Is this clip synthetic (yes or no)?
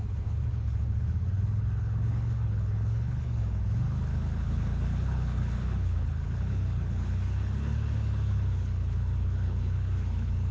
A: yes